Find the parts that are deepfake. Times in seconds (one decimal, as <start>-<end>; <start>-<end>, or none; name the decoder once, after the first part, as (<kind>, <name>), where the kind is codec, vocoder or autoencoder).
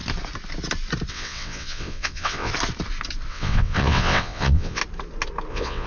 1.1-2.5 (vocoder, WaveNeXt); 3.3-4.8; 5.5-5.9